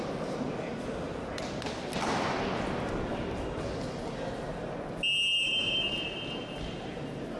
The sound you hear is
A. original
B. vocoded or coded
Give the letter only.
A